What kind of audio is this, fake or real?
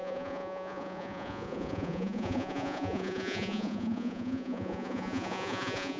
fake